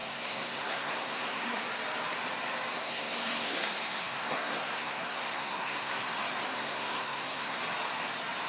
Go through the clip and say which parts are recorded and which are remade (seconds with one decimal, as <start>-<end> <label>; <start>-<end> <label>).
0.0-1.6 remade; 1.6-2.7 recorded; 2.7-6.1 remade; 6.1-6.5 recorded; 6.5-7.6 remade; 7.6-8.5 recorded